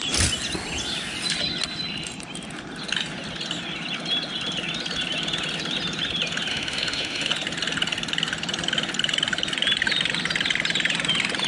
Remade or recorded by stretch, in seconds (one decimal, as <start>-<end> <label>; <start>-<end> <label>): 0.0-6.5 recorded; 6.5-7.3 remade; 7.3-11.5 recorded